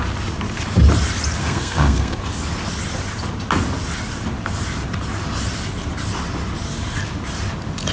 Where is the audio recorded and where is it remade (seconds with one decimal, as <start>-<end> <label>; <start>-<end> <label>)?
0.0-1.4 recorded; 1.4-2.2 remade; 2.2-7.9 recorded